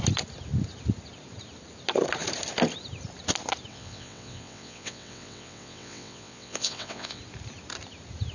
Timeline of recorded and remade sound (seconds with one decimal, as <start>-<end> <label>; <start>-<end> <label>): 0.0-3.7 recorded; 3.7-7.2 remade; 7.2-8.3 recorded